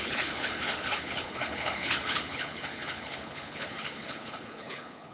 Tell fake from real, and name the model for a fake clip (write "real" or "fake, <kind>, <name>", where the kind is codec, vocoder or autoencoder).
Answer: fake, codec, HILCodec